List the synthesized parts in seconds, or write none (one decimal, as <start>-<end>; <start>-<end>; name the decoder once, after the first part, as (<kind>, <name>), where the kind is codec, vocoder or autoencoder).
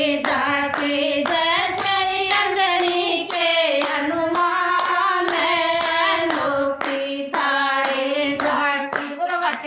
1.8-2.8 (codec, SNAC); 8.0-9.7